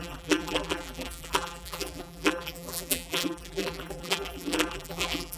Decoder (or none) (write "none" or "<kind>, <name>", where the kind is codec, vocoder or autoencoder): vocoder, BigVGAN v2